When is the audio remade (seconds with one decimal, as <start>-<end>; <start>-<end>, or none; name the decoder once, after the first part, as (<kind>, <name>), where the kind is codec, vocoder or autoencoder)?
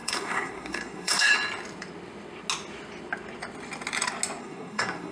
0.0-1.3 (codec, SNAC); 4.4-5.1